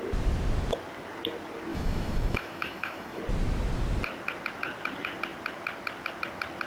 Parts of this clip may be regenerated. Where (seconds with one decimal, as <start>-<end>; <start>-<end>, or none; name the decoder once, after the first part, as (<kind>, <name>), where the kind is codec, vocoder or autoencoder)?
1.7-3.2 (autoencoder, DAC-VAE)